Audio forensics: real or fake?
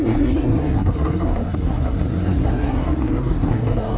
fake